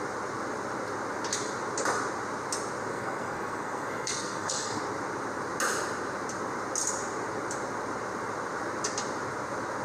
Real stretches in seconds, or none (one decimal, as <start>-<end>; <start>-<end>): 0.0-2.9; 4.8-9.8